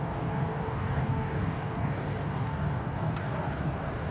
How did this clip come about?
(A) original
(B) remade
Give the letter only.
B